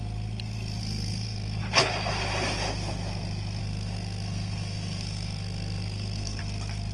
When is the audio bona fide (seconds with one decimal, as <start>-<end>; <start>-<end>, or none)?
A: 0.0-0.8; 1.6-3.6; 6.4-6.9